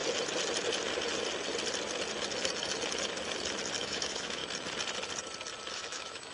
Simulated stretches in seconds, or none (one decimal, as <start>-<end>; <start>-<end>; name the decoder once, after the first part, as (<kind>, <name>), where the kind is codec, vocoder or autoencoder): 3.8-4.4 (autoencoder, DAC-VAE); 5.7-6.3